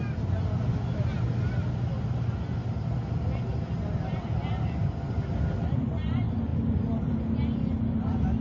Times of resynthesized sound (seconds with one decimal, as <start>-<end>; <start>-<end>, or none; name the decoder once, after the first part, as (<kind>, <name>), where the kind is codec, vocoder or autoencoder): none